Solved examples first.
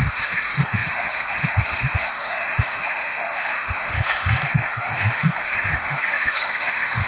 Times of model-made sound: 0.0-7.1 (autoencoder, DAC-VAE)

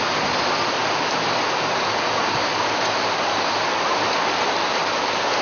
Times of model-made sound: none

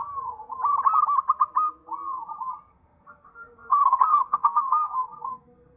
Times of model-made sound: 2.7-5.8 (codec, SNAC)

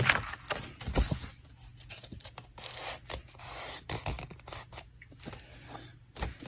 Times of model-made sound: none

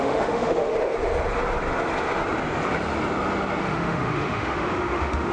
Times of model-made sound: 0.0-0.7 (autoencoder, DAC-VAE); 3.6-5.3